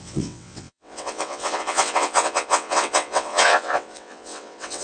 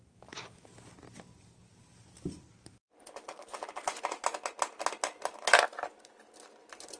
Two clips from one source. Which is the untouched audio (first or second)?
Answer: second